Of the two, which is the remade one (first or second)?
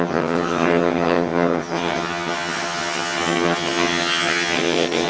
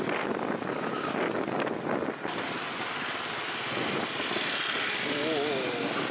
first